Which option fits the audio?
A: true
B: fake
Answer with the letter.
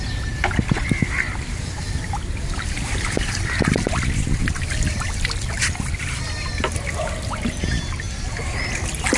A